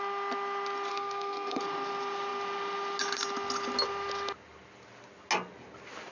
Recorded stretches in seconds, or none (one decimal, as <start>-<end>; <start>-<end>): 0.0-0.9; 1.6-6.1